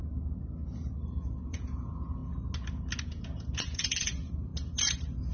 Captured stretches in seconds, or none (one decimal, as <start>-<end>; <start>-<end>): 0.0-1.1; 2.2-3.0; 4.5-5.3